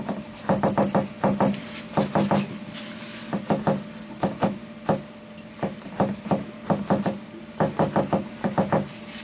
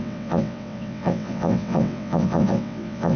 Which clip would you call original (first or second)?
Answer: first